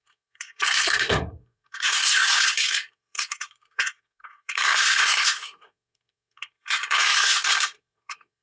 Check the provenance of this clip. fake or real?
fake